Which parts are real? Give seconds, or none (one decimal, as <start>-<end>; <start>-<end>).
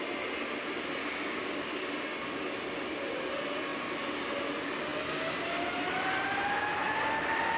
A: 0.0-1.0; 1.9-7.6